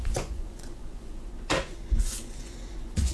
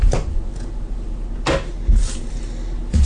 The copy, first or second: first